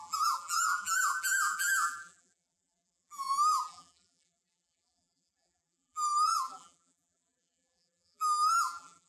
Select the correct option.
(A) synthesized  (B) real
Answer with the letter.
A